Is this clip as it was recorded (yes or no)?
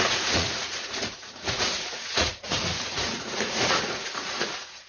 no